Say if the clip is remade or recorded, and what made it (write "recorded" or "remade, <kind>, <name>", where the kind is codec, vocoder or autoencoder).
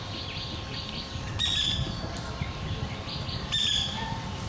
recorded